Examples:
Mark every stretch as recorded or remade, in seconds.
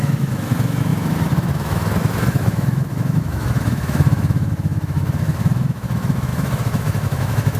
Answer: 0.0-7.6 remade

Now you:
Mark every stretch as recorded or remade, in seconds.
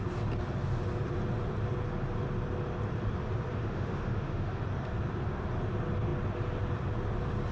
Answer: 0.0-3.6 recorded; 3.6-4.6 remade; 4.6-7.5 recorded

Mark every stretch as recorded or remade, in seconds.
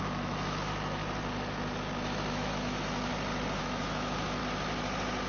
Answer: 0.0-1.0 remade; 1.0-2.3 recorded; 2.3-3.1 remade; 3.1-3.6 recorded; 3.6-4.4 remade; 4.4-5.3 recorded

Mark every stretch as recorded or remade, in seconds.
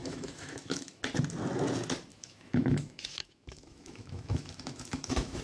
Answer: 0.0-1.0 remade; 1.0-2.1 recorded; 2.1-5.4 remade